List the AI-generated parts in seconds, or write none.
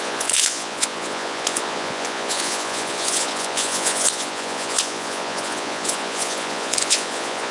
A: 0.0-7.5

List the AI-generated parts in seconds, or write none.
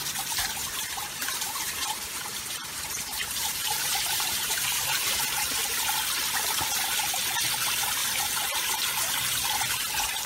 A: 0.6-5.2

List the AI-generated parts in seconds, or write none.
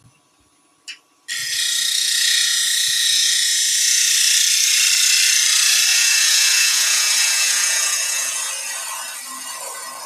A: 1.4-4.1; 5.9-8.5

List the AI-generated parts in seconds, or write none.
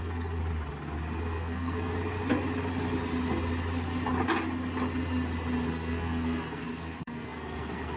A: 0.0-0.4; 1.2-1.9; 5.7-8.0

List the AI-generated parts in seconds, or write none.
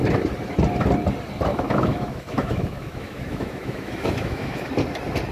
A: 1.5-4.7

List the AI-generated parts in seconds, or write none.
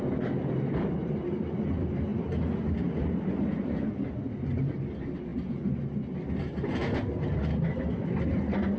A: none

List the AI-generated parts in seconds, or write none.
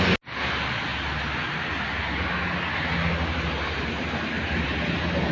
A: none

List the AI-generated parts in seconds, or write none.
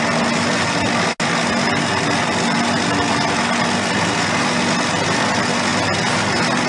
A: none